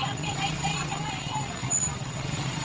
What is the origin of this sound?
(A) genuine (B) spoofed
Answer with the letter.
B